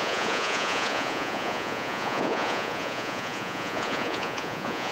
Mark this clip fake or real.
fake